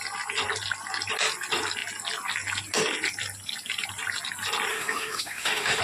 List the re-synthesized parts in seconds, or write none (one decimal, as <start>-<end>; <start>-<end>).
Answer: 4.7-5.8